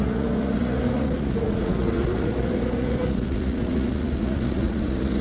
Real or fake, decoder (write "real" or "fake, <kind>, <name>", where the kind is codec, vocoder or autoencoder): fake, vocoder, Vocos